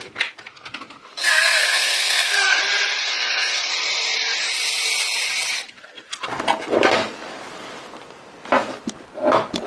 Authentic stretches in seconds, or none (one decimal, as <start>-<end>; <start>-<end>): 0.0-1.1; 2.6-3.0; 3.7-9.7

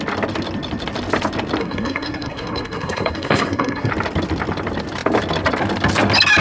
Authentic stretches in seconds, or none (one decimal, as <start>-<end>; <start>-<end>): 0.0-1.6; 3.9-6.4

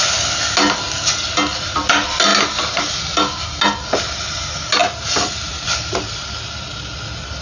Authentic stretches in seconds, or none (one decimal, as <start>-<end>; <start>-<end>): 0.0-7.4

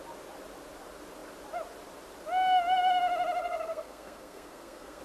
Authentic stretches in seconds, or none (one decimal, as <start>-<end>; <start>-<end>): 0.0-3.4

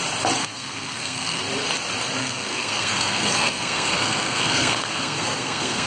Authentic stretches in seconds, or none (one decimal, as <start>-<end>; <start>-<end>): 0.0-0.4; 1.4-2.2

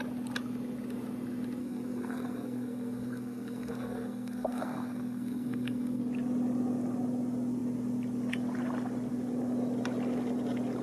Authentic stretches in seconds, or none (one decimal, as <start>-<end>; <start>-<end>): 0.0-1.6; 6.0-10.8

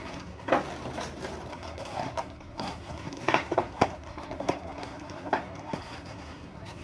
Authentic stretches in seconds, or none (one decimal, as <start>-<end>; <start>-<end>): 0.5-1.5

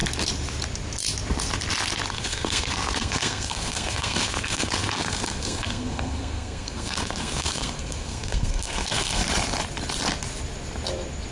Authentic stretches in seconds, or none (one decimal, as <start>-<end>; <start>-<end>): 0.0-2.1; 9.2-11.3